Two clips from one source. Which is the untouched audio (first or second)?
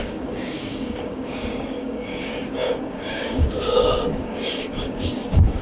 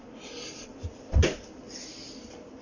second